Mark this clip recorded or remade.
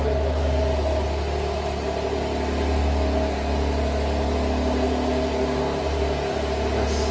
recorded